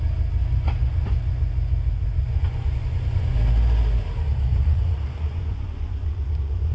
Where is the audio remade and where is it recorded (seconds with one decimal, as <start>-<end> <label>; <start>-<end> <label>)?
0.0-0.4 recorded; 0.4-3.4 remade; 3.4-4.5 recorded; 4.5-6.7 remade